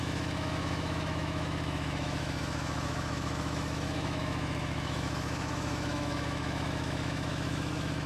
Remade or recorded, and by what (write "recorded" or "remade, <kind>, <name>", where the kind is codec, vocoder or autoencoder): remade, autoencoder, DAC-VAE